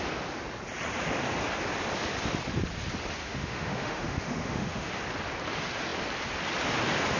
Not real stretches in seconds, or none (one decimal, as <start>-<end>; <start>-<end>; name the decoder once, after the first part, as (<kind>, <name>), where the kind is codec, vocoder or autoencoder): 3.2-4.9 (autoencoder, DAC-VAE)